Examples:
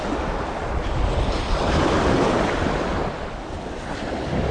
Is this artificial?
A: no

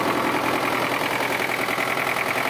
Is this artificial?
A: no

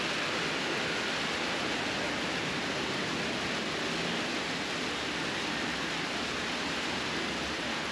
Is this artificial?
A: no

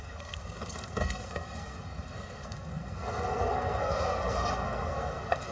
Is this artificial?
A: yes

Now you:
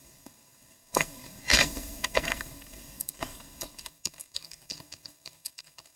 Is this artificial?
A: yes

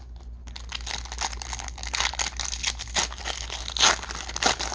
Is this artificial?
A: no